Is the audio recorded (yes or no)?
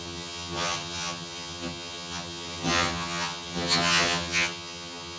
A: no